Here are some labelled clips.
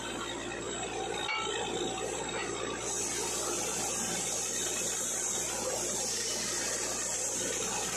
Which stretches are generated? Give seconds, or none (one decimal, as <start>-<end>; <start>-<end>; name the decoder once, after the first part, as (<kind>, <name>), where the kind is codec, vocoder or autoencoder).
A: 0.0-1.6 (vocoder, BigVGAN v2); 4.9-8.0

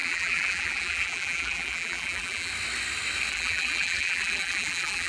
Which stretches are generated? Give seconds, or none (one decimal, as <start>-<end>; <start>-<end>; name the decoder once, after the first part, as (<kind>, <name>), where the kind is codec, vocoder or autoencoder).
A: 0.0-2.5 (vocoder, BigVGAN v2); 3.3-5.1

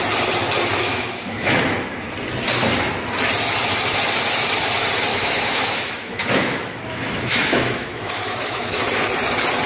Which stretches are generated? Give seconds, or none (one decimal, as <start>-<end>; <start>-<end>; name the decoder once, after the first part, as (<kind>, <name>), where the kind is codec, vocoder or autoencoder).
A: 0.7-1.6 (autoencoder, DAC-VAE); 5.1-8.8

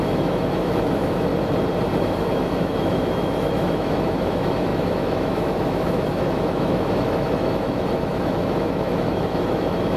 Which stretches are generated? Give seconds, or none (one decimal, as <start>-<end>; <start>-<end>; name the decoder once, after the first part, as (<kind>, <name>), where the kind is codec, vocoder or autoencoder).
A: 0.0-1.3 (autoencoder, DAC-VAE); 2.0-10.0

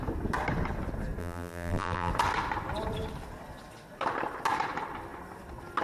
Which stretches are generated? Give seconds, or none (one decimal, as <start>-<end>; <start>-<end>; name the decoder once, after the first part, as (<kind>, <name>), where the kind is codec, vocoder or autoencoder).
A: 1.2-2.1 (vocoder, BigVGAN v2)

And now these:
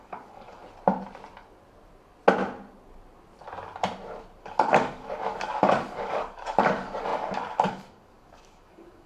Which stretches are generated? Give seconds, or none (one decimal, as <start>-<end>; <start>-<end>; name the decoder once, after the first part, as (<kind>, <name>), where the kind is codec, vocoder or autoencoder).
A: 0.0-0.6 (codec, DAC); 4.4-9.1

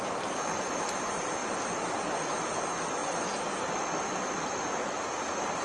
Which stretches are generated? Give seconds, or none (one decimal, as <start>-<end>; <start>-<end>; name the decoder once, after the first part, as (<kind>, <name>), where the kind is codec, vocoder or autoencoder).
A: 0.0-1.4 (vocoder, BigVGAN v2); 2.6-3.0; 5.0-5.6

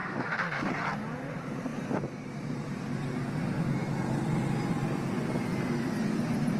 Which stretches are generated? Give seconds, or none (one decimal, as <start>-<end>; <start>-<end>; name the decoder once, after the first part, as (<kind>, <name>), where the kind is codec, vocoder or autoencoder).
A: 0.0-0.7 (autoencoder, DAC-VAE)